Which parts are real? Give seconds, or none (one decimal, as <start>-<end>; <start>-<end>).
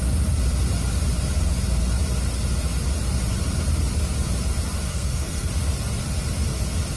0.0-4.9; 5.5-7.0